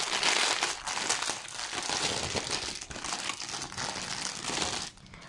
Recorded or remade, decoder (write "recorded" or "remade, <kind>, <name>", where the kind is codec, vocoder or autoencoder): recorded